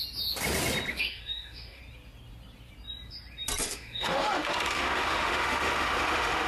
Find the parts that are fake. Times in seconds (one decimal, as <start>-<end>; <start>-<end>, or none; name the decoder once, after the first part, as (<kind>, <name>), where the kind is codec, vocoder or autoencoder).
0.9-1.8 (autoencoder, DAC-VAE); 3.6-6.5